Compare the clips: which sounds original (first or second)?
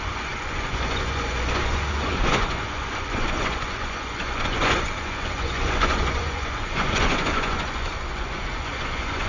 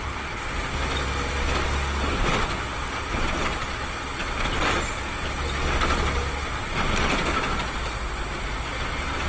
second